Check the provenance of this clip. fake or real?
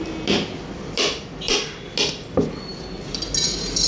real